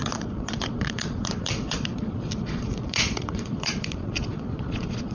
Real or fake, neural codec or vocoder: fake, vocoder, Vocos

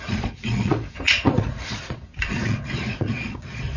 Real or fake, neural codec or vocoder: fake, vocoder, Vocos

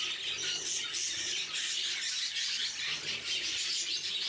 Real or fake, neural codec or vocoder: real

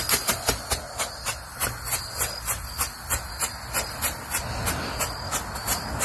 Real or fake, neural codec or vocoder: real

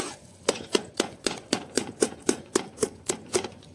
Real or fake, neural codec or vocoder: fake, vocoder, Vocos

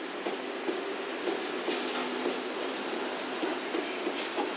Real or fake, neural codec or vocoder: real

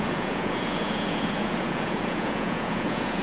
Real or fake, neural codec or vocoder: fake, vocoder, Vocos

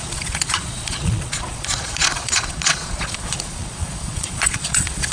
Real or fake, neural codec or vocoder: fake, vocoder, Vocos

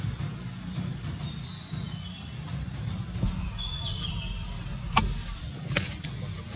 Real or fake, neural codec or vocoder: real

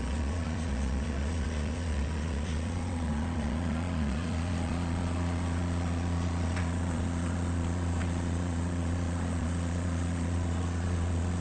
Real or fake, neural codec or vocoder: fake, vocoder, Vocos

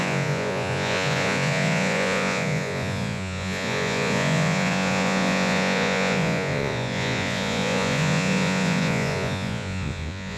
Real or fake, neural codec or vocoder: fake, vocoder, Vocos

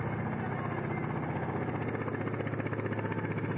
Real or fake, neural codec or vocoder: real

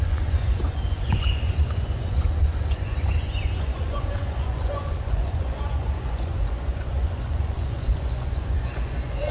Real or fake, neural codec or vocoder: fake, vocoder, Vocos